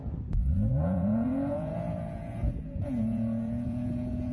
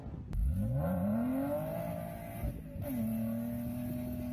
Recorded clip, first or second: second